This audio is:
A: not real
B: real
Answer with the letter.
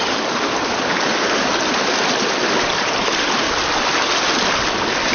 B